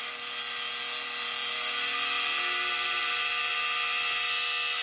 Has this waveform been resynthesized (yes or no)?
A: no